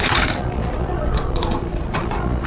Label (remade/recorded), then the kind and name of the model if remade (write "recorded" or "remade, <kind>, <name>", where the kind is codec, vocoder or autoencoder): remade, vocoder, Vocos